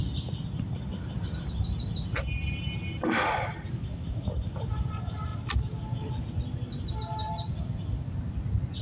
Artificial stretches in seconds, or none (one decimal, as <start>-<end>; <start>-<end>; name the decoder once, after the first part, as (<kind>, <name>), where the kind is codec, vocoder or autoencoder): none